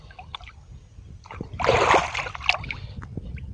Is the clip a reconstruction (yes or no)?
no